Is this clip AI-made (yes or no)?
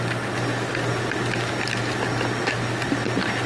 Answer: no